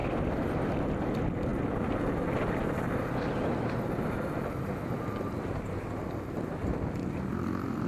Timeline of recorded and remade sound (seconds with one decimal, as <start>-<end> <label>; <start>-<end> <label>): 0.0-1.5 recorded; 1.5-2.0 remade; 2.0-7.9 recorded